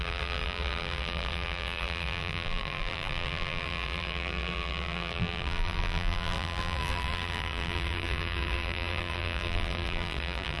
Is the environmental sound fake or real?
fake